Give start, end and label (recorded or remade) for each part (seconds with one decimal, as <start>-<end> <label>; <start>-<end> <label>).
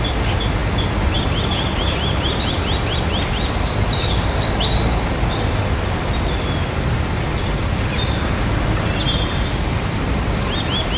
0.0-11.0 recorded